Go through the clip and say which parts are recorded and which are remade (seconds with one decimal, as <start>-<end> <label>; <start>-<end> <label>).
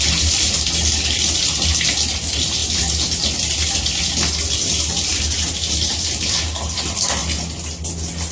0.0-8.3 recorded